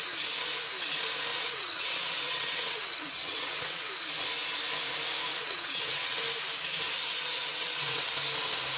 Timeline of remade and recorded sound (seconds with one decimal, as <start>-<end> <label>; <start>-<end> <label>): 0.0-1.3 recorded; 1.3-3.9 remade; 3.9-5.3 recorded; 5.3-6.2 remade; 6.2-7.4 recorded; 7.4-8.1 remade; 8.1-8.8 recorded